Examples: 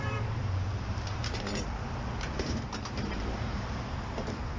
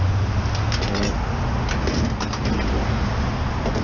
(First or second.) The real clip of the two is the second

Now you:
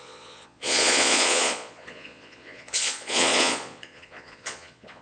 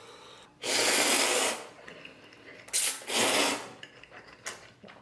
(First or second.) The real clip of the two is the second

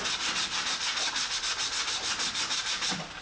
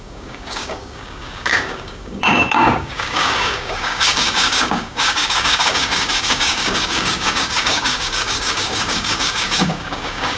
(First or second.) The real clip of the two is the first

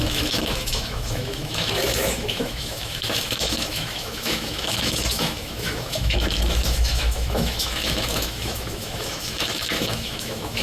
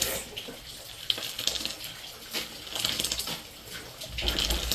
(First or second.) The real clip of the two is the second